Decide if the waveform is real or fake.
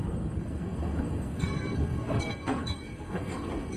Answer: fake